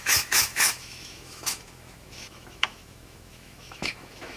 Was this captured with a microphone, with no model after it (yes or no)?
no